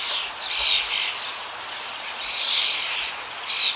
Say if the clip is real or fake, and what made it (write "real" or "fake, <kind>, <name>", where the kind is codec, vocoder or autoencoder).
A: real